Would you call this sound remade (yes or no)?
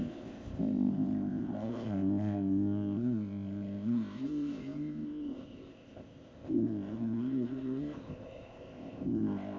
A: yes